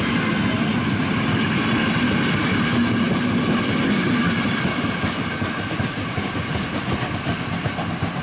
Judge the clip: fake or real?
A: real